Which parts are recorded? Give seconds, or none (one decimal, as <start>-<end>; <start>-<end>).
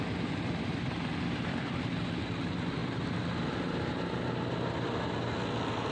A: 0.0-5.9